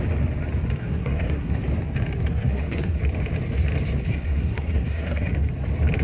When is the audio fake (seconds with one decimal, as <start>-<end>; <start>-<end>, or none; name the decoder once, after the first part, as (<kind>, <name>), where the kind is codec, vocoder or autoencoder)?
0.8-1.6 (codec, SNAC); 2.3-3.0; 4.1-5.3